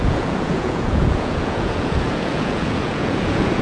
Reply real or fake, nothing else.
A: fake